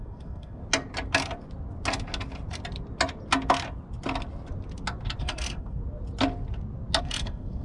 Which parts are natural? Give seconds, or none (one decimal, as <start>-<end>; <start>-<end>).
0.6-5.2; 5.8-7.0